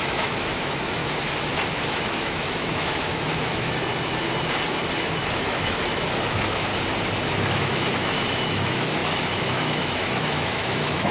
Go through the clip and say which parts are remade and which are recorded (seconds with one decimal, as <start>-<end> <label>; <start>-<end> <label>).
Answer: 0.0-1.0 remade; 1.0-1.7 recorded; 1.7-3.9 remade; 3.9-5.0 recorded; 5.0-6.7 remade; 6.7-7.5 recorded; 7.5-11.1 remade